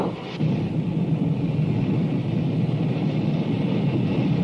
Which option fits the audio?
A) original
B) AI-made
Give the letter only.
A